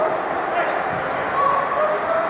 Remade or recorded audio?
recorded